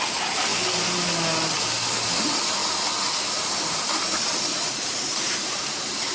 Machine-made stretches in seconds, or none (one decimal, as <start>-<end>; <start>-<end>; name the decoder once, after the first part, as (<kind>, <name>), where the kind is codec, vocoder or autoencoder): 4.5-5.4 (vocoder, Vocos)